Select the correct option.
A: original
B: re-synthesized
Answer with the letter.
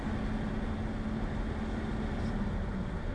A